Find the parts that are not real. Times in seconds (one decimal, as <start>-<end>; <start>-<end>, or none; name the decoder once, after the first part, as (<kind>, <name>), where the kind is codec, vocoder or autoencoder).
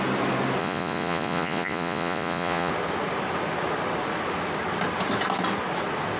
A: 0.6-2.7 (vocoder, Vocos)